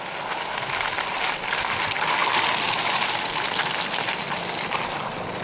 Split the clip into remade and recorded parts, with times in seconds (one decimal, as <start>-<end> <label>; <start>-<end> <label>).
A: 0.0-5.4 recorded

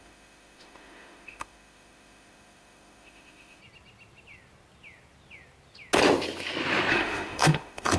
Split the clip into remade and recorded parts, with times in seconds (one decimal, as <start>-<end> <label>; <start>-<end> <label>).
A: 0.0-3.6 remade; 3.6-6.9 recorded; 6.9-8.0 remade

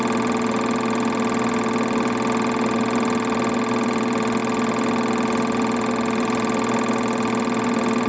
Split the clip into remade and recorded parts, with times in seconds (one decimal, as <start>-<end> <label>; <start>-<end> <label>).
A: 0.0-8.1 recorded

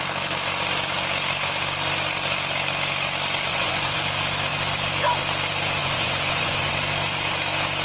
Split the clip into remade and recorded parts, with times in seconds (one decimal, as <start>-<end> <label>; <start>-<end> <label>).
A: 0.0-3.5 recorded; 3.5-4.0 remade; 4.0-5.8 recorded; 5.8-6.7 remade; 6.7-7.8 recorded

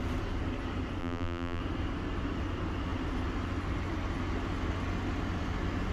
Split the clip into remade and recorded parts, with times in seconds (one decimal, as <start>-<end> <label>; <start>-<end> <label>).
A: 0.0-1.0 recorded; 1.0-1.6 remade; 1.6-5.9 recorded

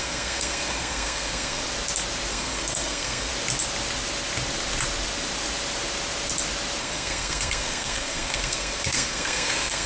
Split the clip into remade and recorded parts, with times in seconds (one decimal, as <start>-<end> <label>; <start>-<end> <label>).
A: 0.0-1.6 remade; 1.6-2.3 recorded; 2.3-3.3 remade; 3.3-6.8 recorded; 6.8-9.9 remade

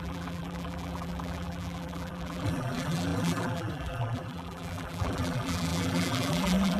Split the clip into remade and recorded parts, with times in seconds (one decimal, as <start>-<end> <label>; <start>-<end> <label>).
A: 0.0-6.8 remade

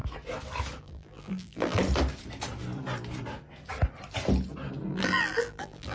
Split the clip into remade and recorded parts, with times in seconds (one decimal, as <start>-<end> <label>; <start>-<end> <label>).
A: 0.0-0.8 recorded; 0.8-1.8 remade; 1.8-4.9 recorded; 4.9-5.9 remade